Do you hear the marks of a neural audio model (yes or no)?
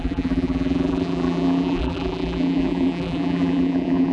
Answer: yes